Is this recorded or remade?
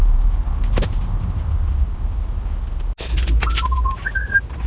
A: recorded